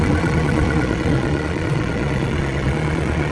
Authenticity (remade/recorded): remade